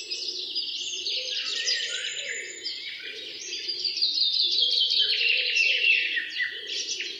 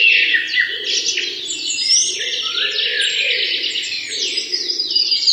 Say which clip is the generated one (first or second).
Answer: first